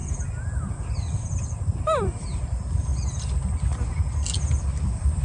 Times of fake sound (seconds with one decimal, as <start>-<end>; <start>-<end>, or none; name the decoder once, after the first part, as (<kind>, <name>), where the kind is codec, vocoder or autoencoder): 0.0-2.9 (vocoder, BigVGAN v2); 4.6-5.2